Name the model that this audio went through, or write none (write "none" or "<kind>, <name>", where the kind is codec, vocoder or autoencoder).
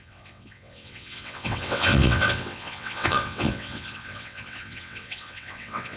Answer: vocoder, WaveNeXt